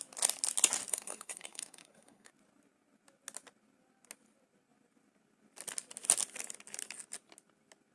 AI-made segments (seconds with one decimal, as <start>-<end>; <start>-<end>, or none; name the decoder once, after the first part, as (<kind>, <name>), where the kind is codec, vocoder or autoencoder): 0.9-2.3 (codec, SNAC)